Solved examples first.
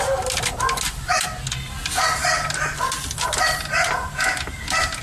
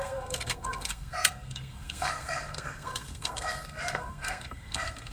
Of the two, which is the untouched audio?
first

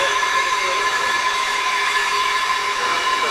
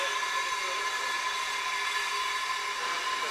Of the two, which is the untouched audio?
second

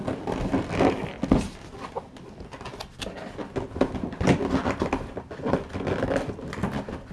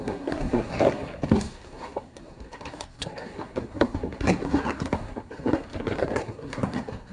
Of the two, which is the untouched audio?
first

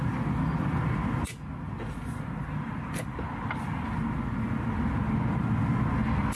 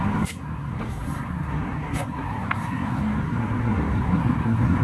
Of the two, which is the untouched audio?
first